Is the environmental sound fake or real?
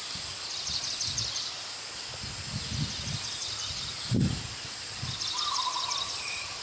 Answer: real